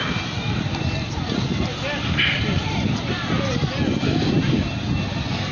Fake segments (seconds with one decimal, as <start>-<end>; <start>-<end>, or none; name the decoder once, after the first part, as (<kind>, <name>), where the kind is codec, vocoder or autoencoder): none

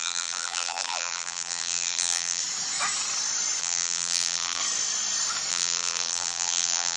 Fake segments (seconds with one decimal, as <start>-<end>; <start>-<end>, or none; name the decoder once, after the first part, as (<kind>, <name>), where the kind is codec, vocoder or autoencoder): 0.0-2.4 (vocoder, BigVGAN v2); 3.6-4.6; 5.5-7.0

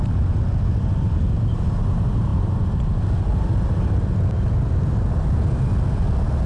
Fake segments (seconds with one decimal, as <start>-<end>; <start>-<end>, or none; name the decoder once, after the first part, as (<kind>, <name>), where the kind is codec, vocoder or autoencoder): none

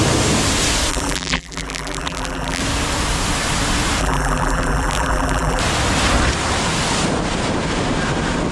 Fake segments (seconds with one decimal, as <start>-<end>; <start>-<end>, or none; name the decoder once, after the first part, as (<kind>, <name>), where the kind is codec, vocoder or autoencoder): 0.9-2.6 (vocoder, BigVGAN v2); 4.0-5.6

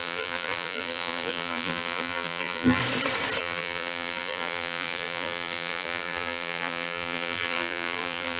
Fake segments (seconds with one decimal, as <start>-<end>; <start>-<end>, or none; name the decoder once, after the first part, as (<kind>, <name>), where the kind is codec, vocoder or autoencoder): 0.0-2.8 (vocoder, BigVGAN v2); 3.4-8.4

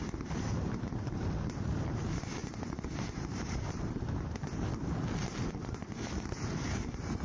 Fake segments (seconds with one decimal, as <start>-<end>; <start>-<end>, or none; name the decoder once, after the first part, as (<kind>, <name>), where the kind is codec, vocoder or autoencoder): 0.0-4.7 (vocoder, BigVGAN v2); 6.8-7.2